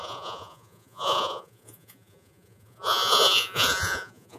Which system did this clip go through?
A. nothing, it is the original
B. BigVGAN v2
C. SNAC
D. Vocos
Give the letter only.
D